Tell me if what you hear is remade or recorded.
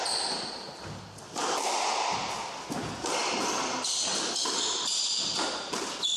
recorded